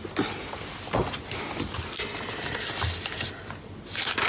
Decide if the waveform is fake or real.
real